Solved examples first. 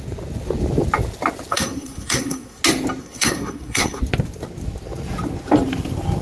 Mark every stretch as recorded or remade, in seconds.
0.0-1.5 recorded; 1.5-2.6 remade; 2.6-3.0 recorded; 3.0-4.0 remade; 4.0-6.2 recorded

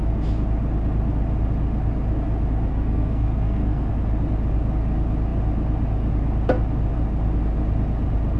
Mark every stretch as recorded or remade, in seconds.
0.0-2.7 recorded; 2.7-3.9 remade; 3.9-8.4 recorded

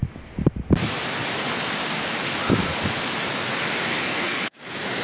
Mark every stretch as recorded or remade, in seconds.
0.0-3.9 recorded; 3.9-4.6 remade; 4.6-5.0 recorded

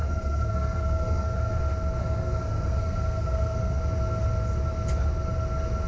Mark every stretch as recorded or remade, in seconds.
0.0-1.6 remade; 1.6-2.0 recorded; 2.0-3.8 remade; 3.8-5.9 recorded

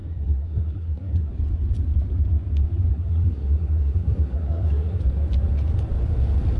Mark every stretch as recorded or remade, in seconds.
0.0-1.3 remade; 1.3-2.9 recorded; 2.9-5.0 remade; 5.0-6.6 recorded

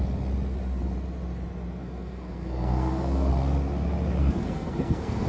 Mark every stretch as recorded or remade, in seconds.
0.0-1.8 recorded; 1.8-3.3 remade; 3.3-4.2 recorded; 4.2-5.3 remade